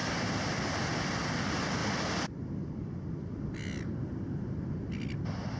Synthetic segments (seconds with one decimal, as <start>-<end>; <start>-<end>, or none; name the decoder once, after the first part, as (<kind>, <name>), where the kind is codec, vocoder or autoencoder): none